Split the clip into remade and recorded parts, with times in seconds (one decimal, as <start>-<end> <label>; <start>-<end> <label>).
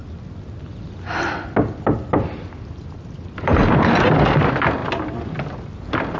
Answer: 0.0-6.2 recorded